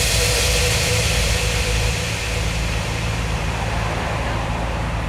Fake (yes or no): yes